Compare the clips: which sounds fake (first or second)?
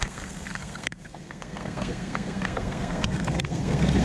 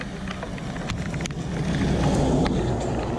first